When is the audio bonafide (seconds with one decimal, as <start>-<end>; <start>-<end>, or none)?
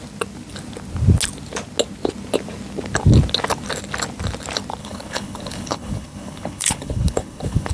0.0-4.8